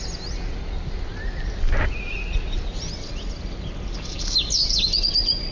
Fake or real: real